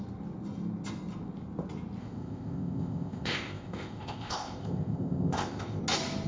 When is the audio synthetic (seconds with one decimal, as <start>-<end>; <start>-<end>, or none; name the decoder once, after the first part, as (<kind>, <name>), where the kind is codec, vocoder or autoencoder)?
2.0-5.8 (codec, ZipCodec)